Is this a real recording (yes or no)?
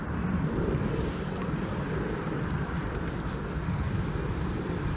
yes